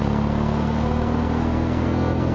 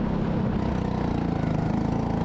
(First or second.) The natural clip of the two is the second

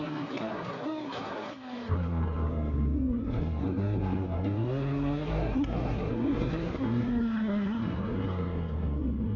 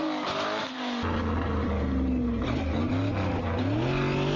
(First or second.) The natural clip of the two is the second